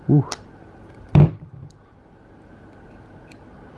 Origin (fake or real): real